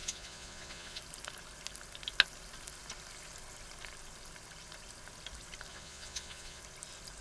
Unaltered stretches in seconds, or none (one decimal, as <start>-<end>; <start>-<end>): 1.0-5.7; 6.6-7.2